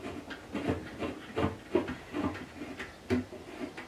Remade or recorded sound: recorded